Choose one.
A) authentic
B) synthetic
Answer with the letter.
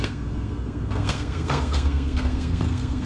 B